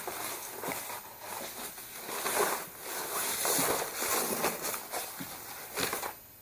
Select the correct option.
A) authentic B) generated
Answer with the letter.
A